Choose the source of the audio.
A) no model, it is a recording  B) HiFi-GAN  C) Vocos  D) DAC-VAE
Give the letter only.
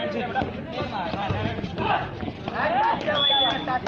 A